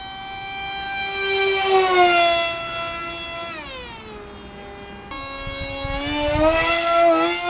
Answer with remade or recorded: recorded